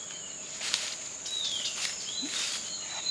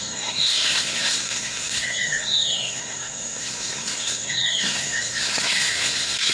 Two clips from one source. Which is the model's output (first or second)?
second